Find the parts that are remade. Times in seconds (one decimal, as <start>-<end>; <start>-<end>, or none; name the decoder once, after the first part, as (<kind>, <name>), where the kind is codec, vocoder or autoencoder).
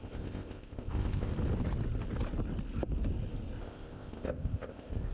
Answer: 0.0-1.3 (codec, ZipCodec); 3.6-5.1